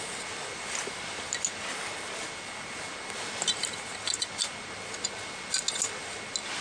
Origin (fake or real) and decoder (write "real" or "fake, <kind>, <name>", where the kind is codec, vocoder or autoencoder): real